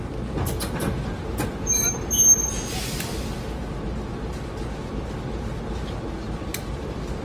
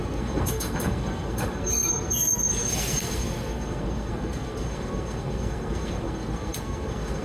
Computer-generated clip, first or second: second